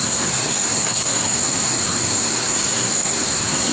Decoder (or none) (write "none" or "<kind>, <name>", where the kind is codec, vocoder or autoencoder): codec, SNAC